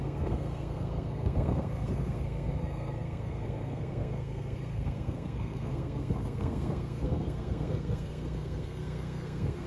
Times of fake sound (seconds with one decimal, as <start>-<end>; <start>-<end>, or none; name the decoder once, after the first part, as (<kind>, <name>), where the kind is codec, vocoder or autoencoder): 0.0-9.7 (codec, SNAC)